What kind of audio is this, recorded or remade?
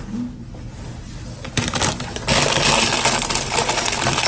recorded